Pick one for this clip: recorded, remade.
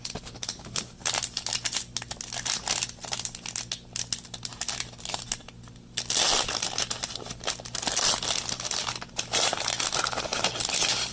recorded